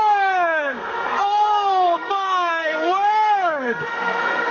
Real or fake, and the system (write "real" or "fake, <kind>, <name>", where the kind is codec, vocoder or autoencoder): fake, codec, SNAC